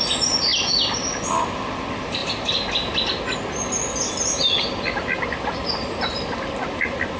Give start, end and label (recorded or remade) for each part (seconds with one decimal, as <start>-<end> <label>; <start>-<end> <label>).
0.0-7.2 recorded

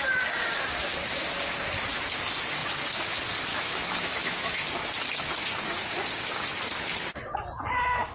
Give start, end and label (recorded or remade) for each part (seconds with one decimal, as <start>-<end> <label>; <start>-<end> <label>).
0.0-3.5 recorded; 3.5-4.5 remade; 4.5-8.1 recorded

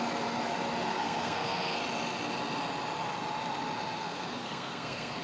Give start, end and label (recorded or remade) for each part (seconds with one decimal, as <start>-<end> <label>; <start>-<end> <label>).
0.0-0.9 recorded; 0.9-1.8 remade; 1.8-4.0 recorded; 4.0-5.2 remade